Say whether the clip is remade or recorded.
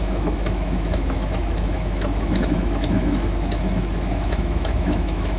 remade